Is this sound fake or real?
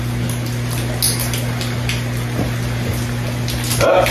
real